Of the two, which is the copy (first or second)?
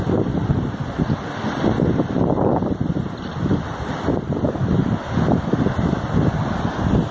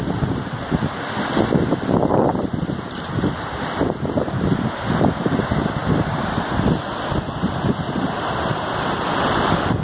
first